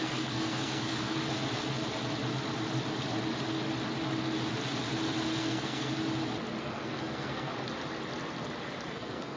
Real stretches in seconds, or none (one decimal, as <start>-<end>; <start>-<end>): 1.2-5.4; 5.9-6.6; 7.5-8.9